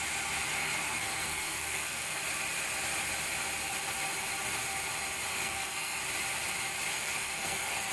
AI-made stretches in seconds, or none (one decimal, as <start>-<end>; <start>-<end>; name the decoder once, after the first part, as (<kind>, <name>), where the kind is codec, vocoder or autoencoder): 0.6-2.2 (codec, SNAC); 5.3-6.0; 6.9-7.9